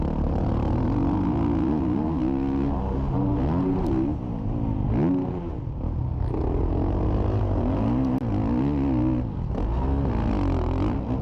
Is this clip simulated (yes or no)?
no